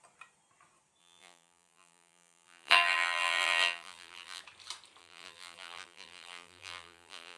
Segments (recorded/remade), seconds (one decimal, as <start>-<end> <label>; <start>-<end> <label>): 0.0-1.0 recorded; 1.0-4.4 remade; 4.4-5.0 recorded; 5.0-7.4 remade